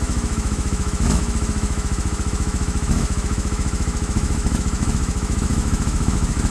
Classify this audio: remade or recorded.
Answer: remade